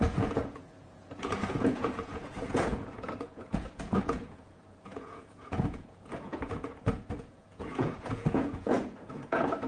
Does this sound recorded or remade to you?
remade